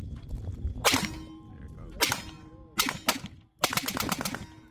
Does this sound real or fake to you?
real